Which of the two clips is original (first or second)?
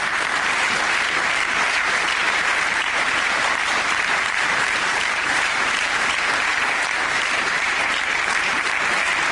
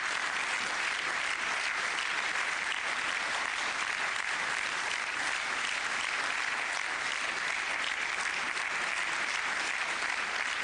second